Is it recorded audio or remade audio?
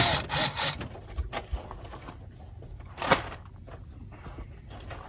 recorded